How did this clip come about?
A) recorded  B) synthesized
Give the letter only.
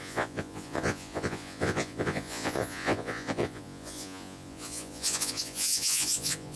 B